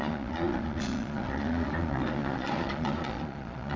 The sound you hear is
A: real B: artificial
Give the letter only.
B